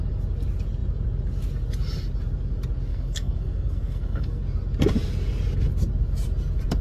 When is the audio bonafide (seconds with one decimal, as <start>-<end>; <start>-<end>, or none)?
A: 0.0-2.9; 4.4-6.8